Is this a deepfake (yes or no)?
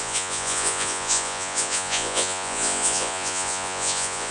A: yes